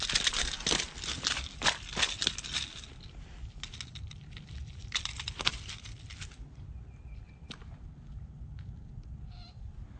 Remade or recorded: recorded